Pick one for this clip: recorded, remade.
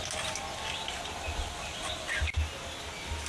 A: recorded